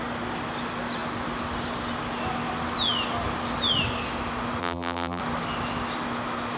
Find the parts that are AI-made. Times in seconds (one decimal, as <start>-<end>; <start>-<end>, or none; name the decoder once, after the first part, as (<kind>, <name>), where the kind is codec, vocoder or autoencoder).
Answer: 4.6-5.2 (vocoder, BigVGAN v2)